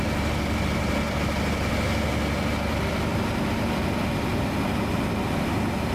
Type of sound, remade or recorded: recorded